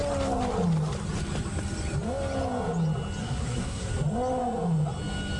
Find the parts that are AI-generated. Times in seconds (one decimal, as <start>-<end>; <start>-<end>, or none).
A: 3.2-3.9